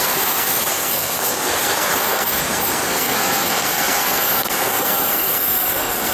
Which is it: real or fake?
fake